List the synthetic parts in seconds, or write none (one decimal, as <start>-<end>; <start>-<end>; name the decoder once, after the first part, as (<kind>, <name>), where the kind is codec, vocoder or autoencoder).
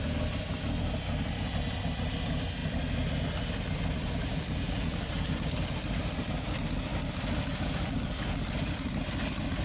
none